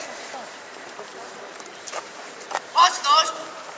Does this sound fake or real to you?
fake